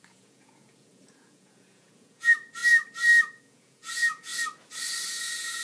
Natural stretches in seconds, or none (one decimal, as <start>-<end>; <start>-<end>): 2.6-3.2; 4.3-5.1